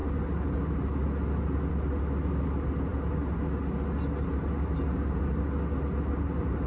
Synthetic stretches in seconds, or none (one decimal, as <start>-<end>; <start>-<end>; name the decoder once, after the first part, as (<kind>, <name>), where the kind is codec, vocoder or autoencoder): none